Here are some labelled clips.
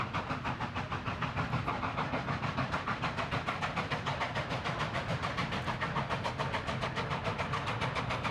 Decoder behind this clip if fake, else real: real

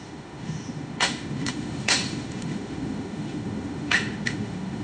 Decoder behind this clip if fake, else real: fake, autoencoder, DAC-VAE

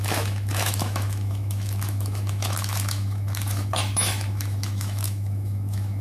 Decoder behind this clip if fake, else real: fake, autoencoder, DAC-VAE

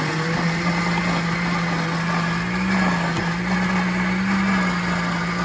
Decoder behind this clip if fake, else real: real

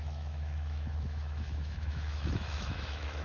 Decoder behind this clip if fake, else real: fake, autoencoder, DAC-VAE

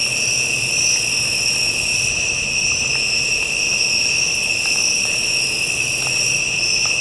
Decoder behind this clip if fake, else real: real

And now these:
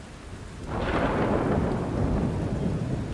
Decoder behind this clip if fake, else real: real